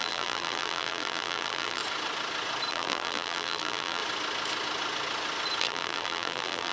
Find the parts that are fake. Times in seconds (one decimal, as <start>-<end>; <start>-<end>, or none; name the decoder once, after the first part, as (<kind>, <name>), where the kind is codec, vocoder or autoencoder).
0.0-1.8 (vocoder, BigVGAN v2); 2.7-4.0; 5.6-6.7